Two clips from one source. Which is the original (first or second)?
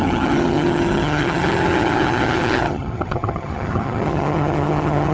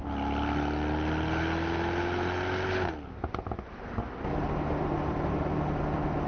second